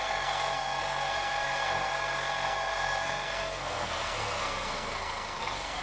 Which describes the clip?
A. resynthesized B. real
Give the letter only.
A